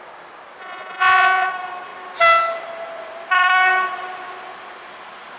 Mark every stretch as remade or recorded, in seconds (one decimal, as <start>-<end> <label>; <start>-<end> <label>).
0.0-0.6 recorded; 0.6-1.5 remade; 1.5-5.4 recorded